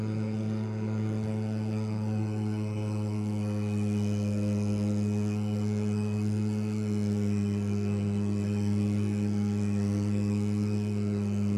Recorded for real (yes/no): no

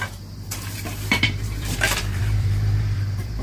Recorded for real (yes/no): no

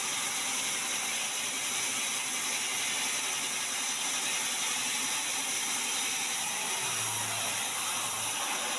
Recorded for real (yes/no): yes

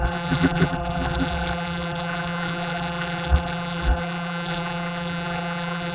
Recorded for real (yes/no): no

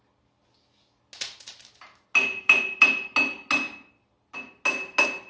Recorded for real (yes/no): yes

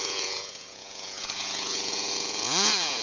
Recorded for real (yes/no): no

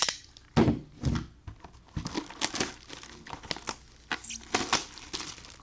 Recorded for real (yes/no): yes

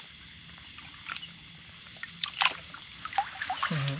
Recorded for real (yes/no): yes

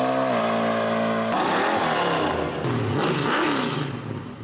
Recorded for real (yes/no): yes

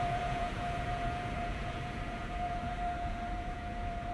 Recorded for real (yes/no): no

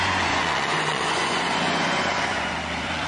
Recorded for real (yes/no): no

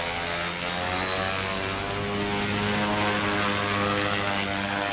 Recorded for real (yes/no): yes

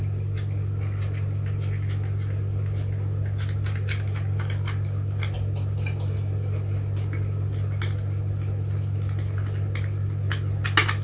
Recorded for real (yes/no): yes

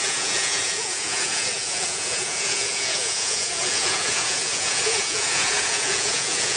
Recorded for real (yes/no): no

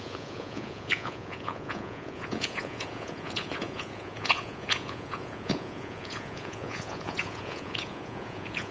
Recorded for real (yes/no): no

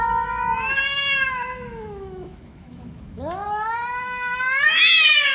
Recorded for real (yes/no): no